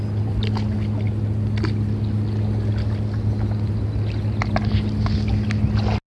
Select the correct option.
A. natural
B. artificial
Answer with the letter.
A